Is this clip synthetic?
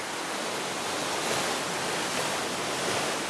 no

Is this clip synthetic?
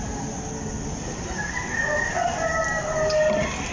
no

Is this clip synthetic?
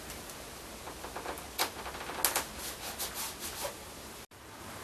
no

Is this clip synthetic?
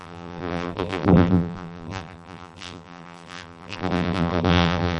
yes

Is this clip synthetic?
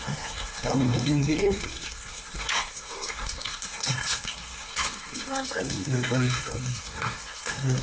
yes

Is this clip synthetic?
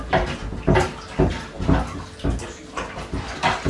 no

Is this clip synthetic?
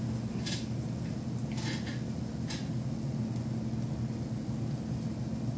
no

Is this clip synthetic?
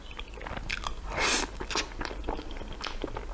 no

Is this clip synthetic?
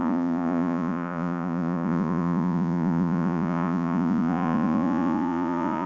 yes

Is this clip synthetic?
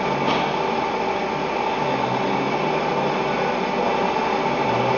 no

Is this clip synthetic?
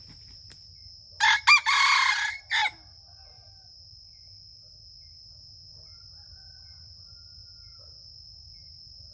no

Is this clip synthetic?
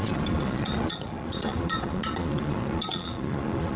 yes